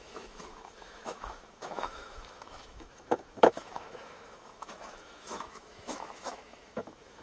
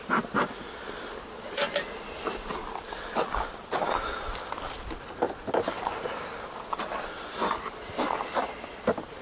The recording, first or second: second